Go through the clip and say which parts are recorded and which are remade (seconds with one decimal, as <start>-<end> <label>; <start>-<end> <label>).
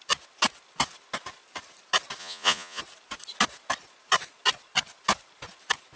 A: 0.0-2.2 recorded; 2.2-2.8 remade; 2.8-6.0 recorded